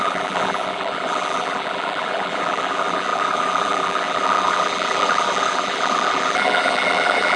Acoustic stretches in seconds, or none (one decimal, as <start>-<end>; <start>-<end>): none